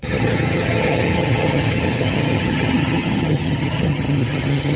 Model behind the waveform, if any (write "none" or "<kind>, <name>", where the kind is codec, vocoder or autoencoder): vocoder, HiFi-GAN